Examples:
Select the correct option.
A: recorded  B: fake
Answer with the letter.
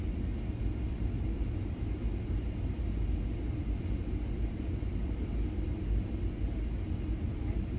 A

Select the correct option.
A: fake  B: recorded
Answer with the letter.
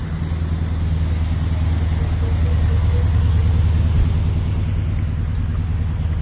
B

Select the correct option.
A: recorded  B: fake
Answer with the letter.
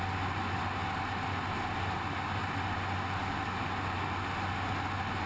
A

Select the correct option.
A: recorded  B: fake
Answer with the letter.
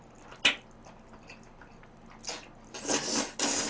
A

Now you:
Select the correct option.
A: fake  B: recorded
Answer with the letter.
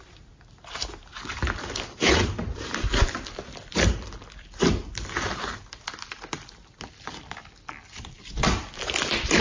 B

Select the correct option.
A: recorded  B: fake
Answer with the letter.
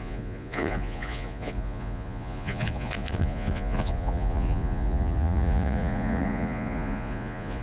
B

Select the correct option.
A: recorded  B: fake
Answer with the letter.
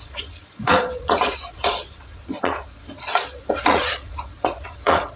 B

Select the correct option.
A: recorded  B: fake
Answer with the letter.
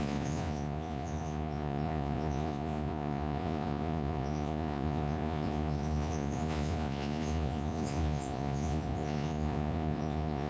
B